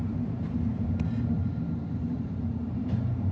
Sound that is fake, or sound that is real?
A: fake